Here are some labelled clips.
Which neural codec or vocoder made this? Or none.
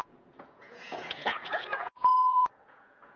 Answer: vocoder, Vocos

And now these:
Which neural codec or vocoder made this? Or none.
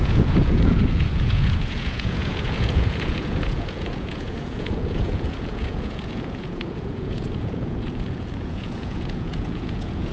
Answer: vocoder, Vocos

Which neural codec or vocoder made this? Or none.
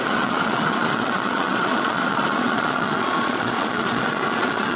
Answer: vocoder, Vocos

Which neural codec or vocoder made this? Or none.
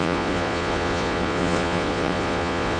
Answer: vocoder, Vocos